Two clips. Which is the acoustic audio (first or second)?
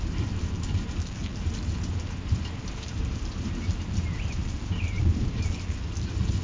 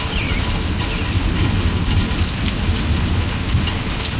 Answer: second